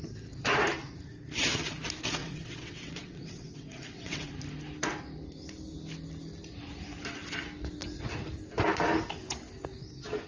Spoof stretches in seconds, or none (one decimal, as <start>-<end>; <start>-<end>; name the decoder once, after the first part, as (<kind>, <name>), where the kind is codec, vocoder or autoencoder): 2.2-4.3 (vocoder, WaveNeXt)